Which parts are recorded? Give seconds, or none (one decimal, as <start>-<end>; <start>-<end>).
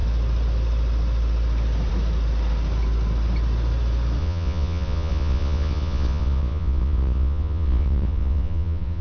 0.0-4.2